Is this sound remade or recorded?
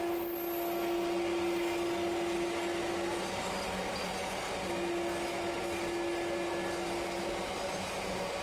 recorded